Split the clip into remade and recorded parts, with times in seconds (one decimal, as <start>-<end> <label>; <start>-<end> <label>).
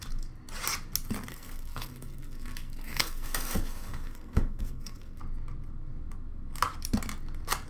0.0-1.3 recorded; 1.3-5.2 remade; 5.2-7.7 recorded